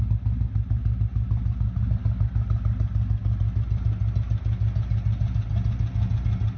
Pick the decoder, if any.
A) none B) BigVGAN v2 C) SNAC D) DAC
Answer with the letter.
A